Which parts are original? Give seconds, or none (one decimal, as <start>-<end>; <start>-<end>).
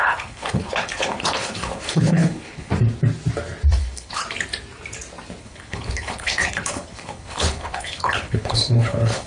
2.7-3.8; 4.2-5.4